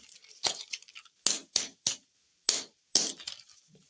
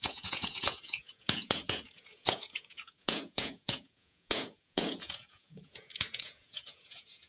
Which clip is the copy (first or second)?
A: second